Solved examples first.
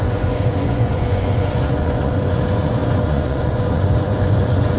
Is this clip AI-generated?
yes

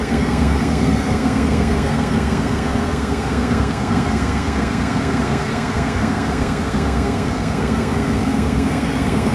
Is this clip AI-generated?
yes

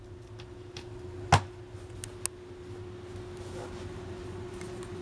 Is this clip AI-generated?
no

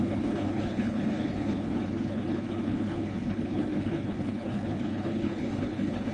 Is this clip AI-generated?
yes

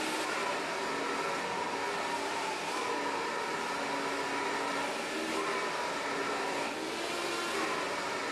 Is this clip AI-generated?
no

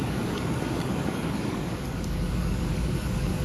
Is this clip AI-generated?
yes